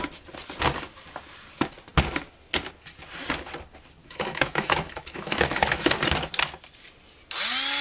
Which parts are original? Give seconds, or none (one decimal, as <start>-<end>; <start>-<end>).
0.0-4.0; 5.9-7.8